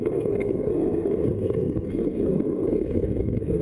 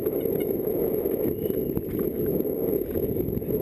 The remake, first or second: first